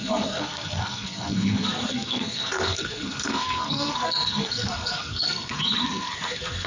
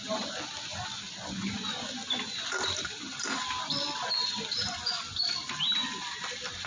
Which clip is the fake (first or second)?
first